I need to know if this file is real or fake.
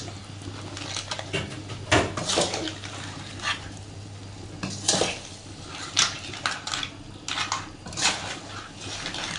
real